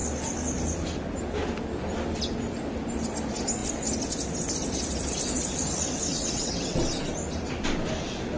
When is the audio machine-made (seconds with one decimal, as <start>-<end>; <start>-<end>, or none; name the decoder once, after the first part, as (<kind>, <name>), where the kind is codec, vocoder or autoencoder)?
6.1-6.8 (vocoder, WaveNeXt)